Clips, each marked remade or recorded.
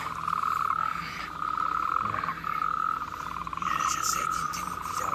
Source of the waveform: remade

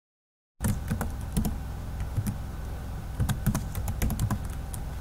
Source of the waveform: recorded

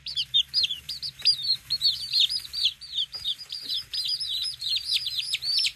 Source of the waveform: remade